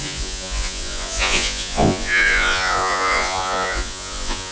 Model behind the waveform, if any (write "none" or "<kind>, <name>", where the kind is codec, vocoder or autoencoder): vocoder, Vocos